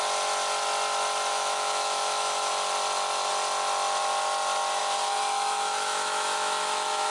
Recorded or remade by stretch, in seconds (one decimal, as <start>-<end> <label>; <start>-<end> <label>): 0.0-1.3 recorded; 1.3-2.5 remade; 2.5-4.8 recorded; 4.8-7.1 remade